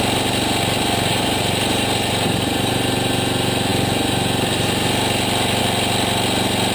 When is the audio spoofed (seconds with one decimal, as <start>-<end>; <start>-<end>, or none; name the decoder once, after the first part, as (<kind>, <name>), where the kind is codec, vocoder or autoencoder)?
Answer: 1.1-2.7 (vocoder, BigVGAN v2)